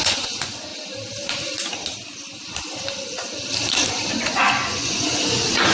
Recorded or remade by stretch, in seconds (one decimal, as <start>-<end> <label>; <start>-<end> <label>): 0.0-0.7 remade; 0.7-3.9 recorded; 3.9-5.7 remade